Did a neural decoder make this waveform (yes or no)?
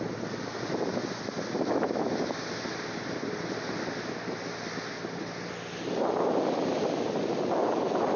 no